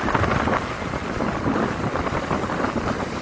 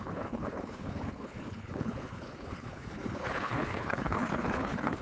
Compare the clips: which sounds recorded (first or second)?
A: first